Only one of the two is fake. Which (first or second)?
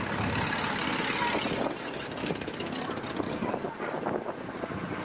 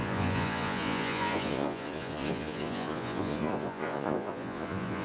second